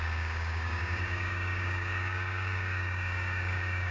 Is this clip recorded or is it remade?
remade